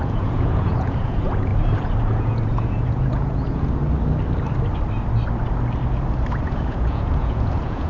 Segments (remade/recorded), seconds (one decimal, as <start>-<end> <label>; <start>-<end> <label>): 0.0-1.5 remade; 1.5-2.0 recorded; 2.0-3.8 remade; 3.8-6.3 recorded; 6.3-7.9 remade